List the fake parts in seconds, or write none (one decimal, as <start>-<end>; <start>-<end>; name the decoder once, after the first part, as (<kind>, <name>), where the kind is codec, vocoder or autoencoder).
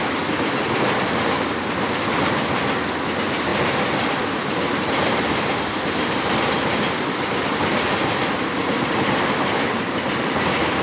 3.5-6.3 (vocoder, BigVGAN v2)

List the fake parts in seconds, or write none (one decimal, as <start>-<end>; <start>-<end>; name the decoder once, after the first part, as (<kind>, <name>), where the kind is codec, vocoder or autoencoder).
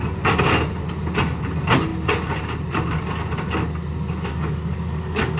4.3-5.4 (codec, DAC)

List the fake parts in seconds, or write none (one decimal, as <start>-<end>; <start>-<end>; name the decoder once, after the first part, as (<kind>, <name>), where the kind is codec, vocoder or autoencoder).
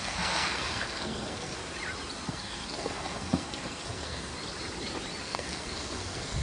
0.0-1.6 (codec, SNAC); 2.3-4.3; 5.2-6.4